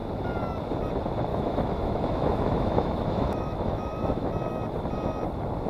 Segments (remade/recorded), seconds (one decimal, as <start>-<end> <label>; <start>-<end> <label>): 0.0-1.3 recorded; 1.3-4.3 remade; 4.3-5.7 recorded